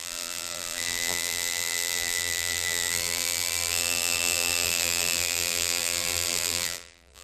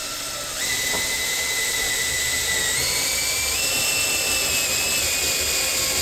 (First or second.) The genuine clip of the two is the second